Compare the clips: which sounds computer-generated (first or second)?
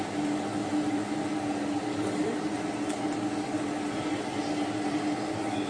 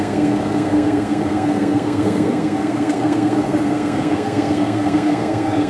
second